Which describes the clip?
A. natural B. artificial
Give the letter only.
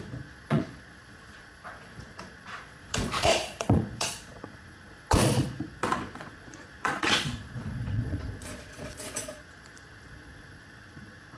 B